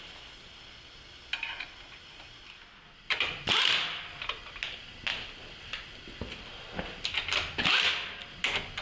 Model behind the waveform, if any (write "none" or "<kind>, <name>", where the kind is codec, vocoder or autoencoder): none